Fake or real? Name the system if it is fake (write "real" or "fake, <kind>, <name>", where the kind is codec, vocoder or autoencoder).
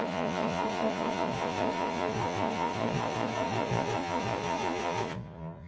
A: fake, vocoder, Vocos